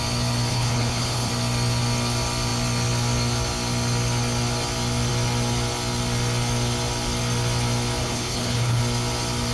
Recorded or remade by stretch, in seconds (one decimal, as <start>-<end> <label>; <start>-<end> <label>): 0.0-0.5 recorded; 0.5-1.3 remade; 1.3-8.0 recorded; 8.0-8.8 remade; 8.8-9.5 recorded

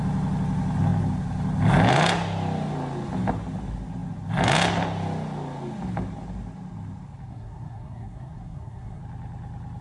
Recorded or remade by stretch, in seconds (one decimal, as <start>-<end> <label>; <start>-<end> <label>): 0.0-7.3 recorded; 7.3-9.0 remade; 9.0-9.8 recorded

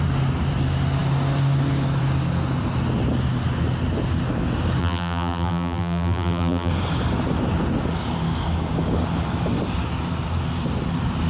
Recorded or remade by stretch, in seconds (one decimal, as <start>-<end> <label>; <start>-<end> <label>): 0.0-4.8 recorded; 4.8-6.7 remade; 6.7-11.3 recorded